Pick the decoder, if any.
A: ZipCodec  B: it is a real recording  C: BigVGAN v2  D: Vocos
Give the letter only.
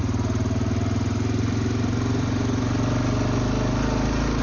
B